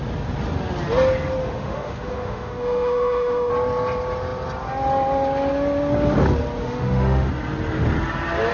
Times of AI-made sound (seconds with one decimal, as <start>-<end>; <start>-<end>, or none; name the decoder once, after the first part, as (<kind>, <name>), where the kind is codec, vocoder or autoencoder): 1.4-3.5 (autoencoder, DAC-VAE); 6.6-7.3